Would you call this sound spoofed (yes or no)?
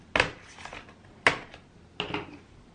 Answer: no